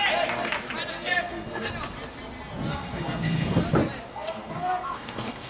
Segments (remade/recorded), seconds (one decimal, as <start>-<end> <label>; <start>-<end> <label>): 0.0-0.9 recorded; 0.9-1.7 remade; 1.7-2.7 recorded; 2.7-3.6 remade; 3.6-4.1 recorded; 4.1-5.5 remade